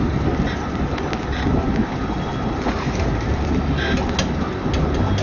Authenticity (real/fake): real